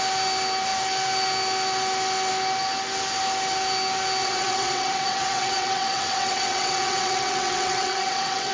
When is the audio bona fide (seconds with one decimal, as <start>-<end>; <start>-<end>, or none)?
0.0-4.2